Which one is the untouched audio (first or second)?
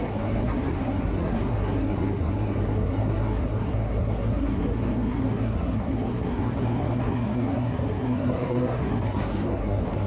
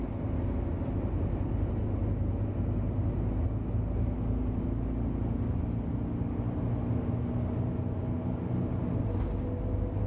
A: second